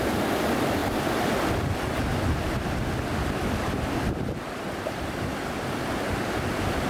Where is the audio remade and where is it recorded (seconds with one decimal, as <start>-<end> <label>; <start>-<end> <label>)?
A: 0.0-6.9 remade